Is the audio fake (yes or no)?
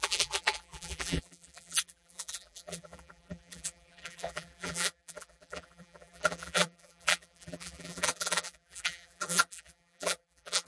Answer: yes